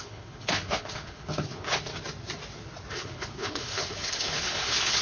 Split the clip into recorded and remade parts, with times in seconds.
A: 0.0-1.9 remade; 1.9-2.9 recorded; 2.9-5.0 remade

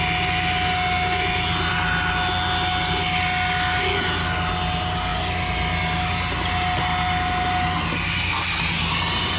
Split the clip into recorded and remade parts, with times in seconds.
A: 0.0-9.4 recorded

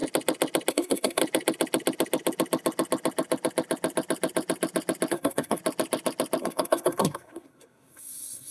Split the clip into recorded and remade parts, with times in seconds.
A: 0.0-0.7 recorded; 0.7-1.2 remade; 1.2-5.1 recorded; 5.1-5.6 remade; 5.6-6.4 recorded; 6.4-8.5 remade

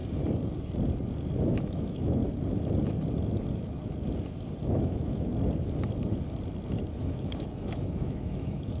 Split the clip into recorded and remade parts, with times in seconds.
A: 0.0-1.6 recorded; 1.6-2.2 remade; 2.2-4.6 recorded; 4.6-5.3 remade; 5.3-7.0 recorded; 7.0-8.8 remade

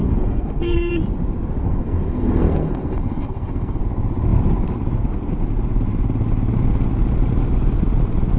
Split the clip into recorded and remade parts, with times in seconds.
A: 0.0-0.9 remade; 0.9-1.6 recorded; 1.6-3.8 remade; 3.8-8.4 recorded

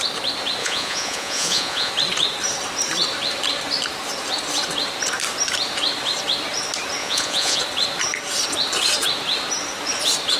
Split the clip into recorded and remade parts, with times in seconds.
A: 0.0-0.6 recorded; 0.6-1.9 remade; 1.9-7.0 recorded; 7.0-7.6 remade; 7.6-10.4 recorded